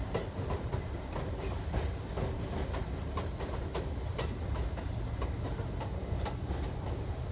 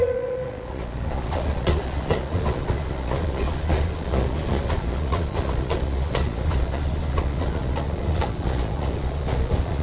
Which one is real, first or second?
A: first